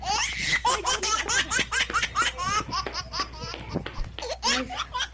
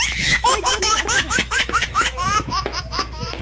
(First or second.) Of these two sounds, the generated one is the second